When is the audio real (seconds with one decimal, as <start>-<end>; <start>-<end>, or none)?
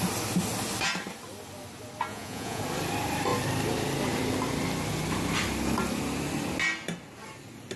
0.0-2.1; 2.6-7.8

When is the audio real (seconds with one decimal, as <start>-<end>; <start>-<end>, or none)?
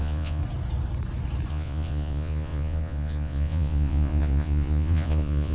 0.4-1.5